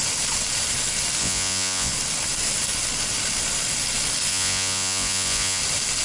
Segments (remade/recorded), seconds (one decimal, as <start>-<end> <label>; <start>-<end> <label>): 0.0-1.2 recorded; 1.2-1.9 remade; 1.9-4.3 recorded; 4.3-5.6 remade; 5.6-6.0 recorded